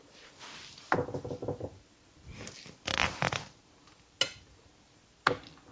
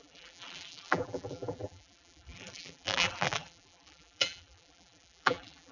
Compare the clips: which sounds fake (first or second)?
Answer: second